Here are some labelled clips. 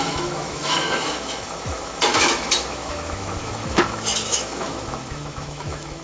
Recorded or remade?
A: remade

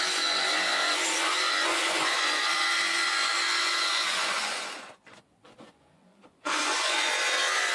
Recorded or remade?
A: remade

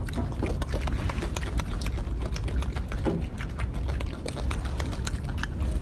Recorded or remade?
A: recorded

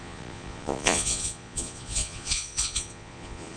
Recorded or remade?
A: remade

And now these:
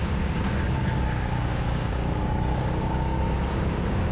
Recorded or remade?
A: remade